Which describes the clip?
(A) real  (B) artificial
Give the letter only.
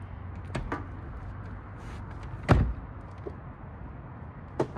A